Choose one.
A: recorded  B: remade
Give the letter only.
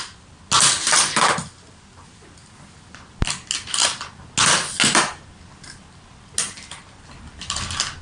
A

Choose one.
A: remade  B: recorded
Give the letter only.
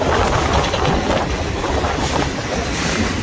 B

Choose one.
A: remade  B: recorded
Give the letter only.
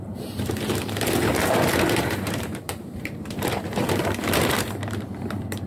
A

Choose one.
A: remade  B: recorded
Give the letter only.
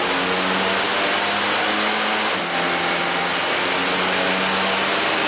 B